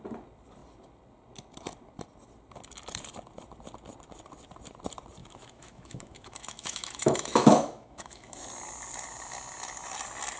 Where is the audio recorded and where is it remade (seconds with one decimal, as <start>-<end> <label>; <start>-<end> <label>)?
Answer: 0.0-5.2 recorded; 5.2-8.5 remade; 8.5-10.4 recorded